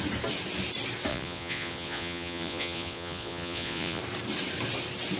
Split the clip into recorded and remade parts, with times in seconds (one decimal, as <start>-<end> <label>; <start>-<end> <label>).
0.0-1.1 recorded; 1.1-4.0 remade; 4.0-5.2 recorded